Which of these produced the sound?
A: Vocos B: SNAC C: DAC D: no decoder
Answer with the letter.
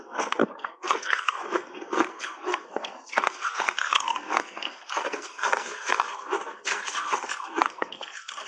B